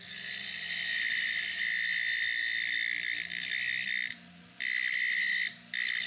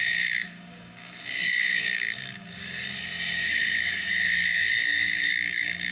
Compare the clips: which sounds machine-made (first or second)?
second